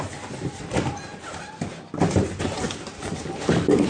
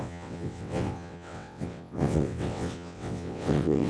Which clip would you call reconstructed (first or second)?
second